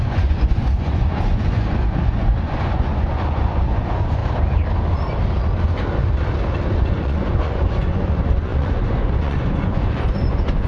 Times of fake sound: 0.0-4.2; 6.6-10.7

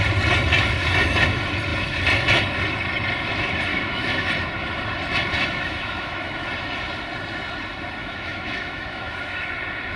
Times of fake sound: 3.7-4.3; 5.4-6.5; 8.0-9.5

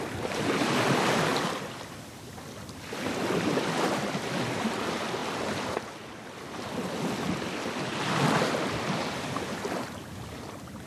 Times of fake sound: none

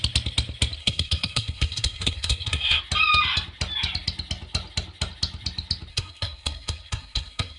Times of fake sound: 0.8-2.8; 5.9-7.6